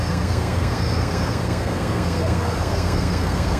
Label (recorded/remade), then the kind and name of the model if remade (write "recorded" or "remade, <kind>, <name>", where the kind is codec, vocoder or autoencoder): remade, codec, SNAC